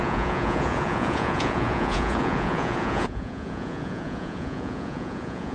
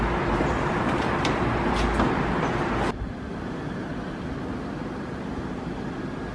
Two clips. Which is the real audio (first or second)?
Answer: second